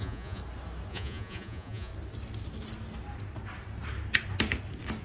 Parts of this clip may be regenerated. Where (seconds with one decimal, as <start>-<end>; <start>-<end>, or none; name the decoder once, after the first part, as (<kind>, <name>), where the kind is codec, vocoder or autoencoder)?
0.0-0.4 (vocoder, Vocos); 0.9-1.9